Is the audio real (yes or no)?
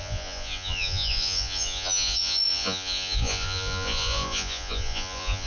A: no